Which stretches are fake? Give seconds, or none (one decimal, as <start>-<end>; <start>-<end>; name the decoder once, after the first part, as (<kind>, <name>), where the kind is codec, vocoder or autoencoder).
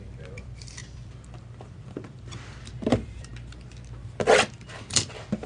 0.0-3.3 (vocoder, BigVGAN v2); 4.3-5.5